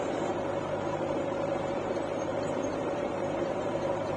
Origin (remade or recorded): remade